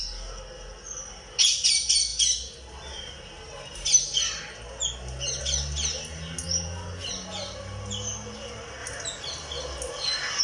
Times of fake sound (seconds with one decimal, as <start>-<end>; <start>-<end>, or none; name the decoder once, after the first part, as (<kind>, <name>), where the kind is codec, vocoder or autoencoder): none